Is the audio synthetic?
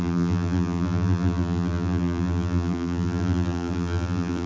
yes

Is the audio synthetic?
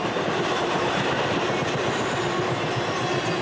no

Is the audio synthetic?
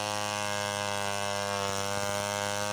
no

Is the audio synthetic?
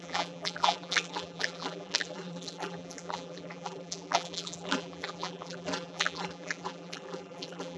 yes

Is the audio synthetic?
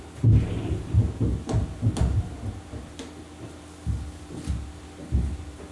no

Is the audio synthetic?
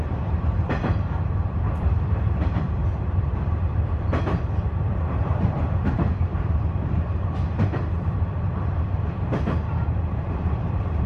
yes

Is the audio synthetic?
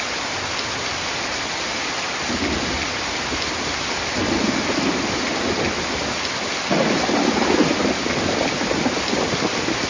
no